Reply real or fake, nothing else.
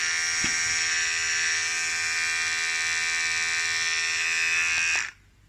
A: real